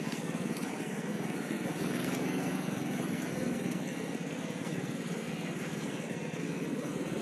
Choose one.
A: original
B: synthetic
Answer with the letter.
B